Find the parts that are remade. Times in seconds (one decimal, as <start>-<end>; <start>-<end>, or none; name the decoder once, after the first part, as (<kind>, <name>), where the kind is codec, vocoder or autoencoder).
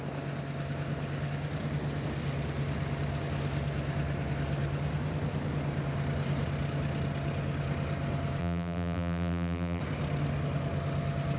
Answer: 8.4-9.8 (vocoder, BigVGAN v2)